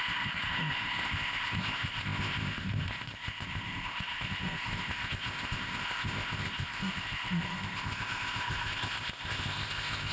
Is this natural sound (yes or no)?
no